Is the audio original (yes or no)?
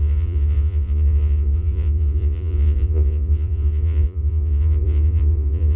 no